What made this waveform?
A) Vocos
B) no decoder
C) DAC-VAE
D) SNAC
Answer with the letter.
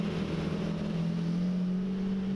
B